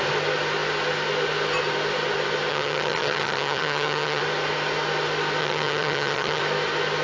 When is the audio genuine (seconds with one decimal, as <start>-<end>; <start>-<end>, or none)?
0.0-2.5; 4.2-5.4; 6.4-7.0